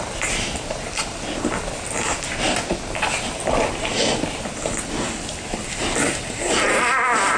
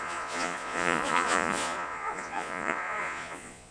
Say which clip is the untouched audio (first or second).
first